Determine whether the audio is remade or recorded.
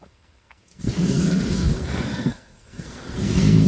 remade